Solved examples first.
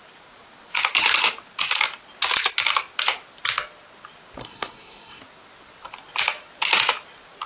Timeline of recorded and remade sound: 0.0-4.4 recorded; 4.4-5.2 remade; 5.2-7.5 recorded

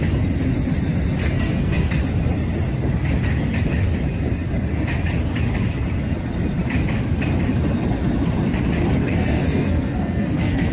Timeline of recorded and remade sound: 0.0-1.2 recorded; 1.2-2.0 remade; 2.0-9.0 recorded; 9.0-10.7 remade

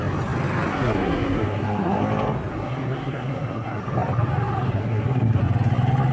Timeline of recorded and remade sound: 0.0-0.7 recorded; 0.7-2.0 remade; 2.0-2.5 recorded; 2.5-3.8 remade; 3.8-4.8 recorded; 4.8-5.4 remade; 5.4-6.1 recorded

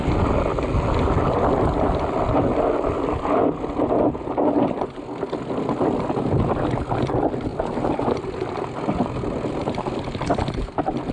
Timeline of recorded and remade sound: 0.0-11.1 recorded

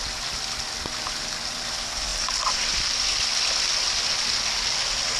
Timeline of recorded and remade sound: 0.0-5.2 recorded

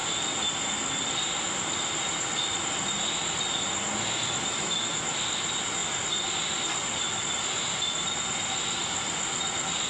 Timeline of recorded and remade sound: 0.0-9.9 recorded